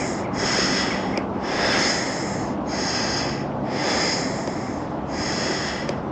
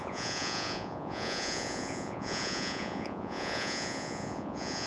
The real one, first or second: first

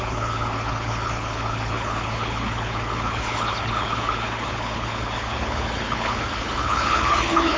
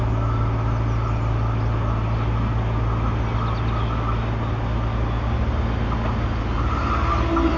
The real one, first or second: second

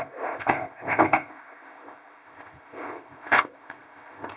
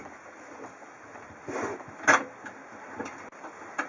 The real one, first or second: second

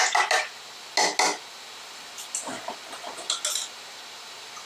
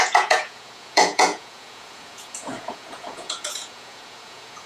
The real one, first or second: first